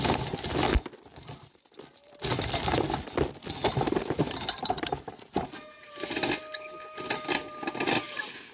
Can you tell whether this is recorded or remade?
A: recorded